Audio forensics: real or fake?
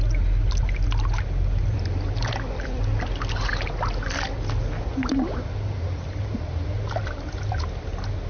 real